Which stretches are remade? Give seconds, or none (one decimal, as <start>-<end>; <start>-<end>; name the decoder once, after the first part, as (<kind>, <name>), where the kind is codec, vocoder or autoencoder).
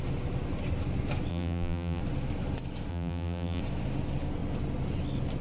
1.3-2.0 (vocoder, BigVGAN v2); 2.9-3.6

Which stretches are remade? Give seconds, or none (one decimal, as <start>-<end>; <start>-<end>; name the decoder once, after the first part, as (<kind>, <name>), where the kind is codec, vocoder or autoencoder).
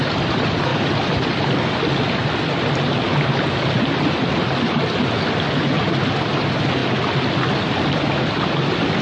none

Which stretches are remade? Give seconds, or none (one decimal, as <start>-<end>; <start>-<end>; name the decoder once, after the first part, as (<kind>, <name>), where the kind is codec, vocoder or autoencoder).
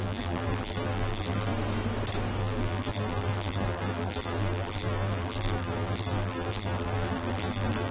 0.0-1.5 (vocoder, BigVGAN v2); 2.4-7.9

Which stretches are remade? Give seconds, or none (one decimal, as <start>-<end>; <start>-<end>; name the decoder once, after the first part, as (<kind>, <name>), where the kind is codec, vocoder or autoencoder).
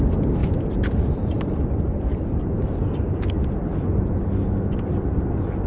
0.4-1.6 (vocoder, BigVGAN v2); 2.1-3.1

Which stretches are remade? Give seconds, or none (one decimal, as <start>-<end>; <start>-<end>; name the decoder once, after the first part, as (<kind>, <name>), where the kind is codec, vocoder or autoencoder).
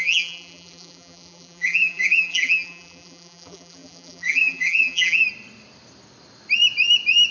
0.0-5.2 (vocoder, BigVGAN v2)